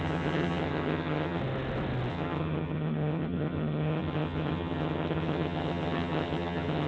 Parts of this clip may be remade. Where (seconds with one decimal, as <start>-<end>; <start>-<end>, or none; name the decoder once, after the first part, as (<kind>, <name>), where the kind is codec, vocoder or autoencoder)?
0.0-1.4 (vocoder, HiFi-GAN); 2.1-6.9